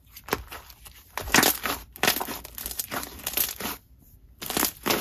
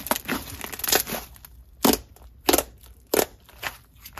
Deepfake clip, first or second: first